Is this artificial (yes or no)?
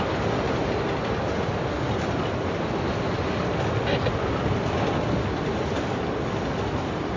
no